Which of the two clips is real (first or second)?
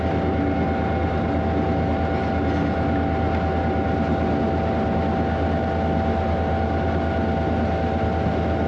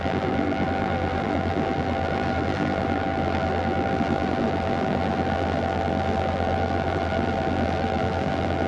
first